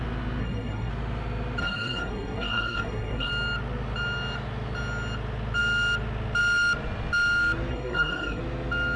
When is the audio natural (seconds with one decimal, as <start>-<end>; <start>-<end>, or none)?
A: 0.0-0.4; 0.9-1.6; 3.3-7.7; 8.4-9.0